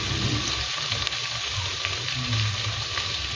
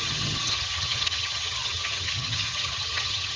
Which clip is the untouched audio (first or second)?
first